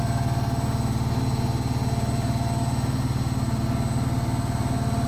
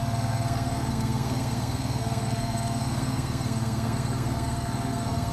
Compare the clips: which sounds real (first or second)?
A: first